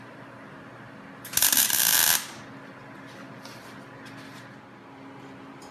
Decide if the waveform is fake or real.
real